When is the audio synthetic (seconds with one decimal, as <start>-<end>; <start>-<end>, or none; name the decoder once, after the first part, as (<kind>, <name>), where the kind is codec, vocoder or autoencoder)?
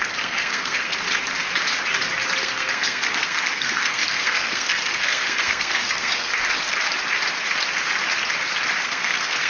0.0-0.9 (codec, SNAC); 2.4-6.3; 8.8-9.5